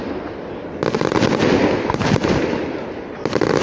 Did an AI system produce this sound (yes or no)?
no